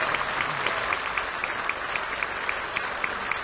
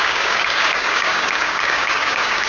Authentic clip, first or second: first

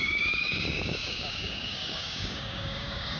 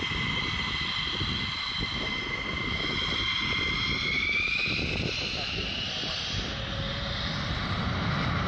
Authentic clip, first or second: second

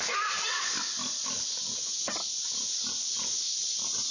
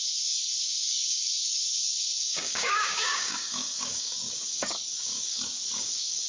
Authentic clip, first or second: first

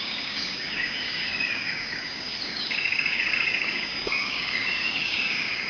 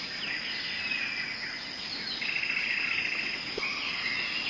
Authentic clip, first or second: second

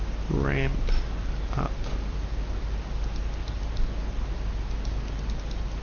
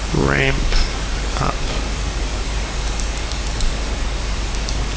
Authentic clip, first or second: first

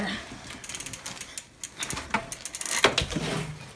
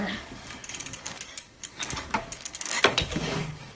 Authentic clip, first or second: first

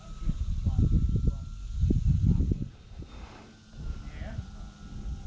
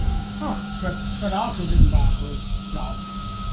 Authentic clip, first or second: first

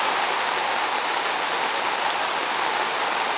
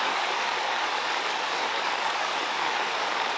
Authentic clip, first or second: first